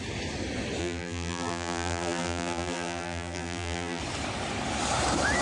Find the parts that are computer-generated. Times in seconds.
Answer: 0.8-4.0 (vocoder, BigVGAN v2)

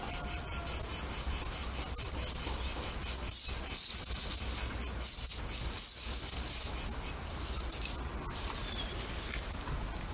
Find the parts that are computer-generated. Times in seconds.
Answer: none

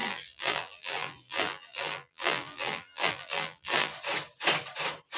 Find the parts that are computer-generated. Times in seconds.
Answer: 0.0-3.9 (vocoder, BigVGAN v2)

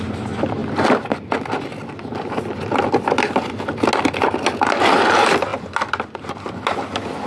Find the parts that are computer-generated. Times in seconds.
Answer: 0.6-2.5 (vocoder, BigVGAN v2); 5.5-6.0

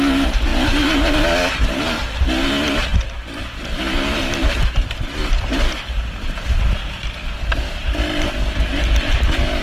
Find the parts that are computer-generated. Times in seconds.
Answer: none

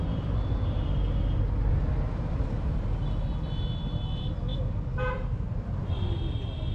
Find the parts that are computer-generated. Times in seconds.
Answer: none